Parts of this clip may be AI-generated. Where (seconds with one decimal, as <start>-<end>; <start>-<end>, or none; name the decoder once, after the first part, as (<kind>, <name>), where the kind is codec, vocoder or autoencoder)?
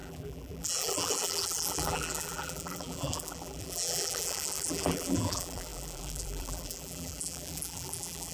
0.0-8.3 (vocoder, BigVGAN v2)